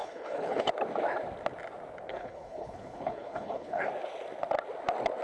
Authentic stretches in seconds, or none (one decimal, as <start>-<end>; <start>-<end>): 0.7-2.1; 3.9-5.2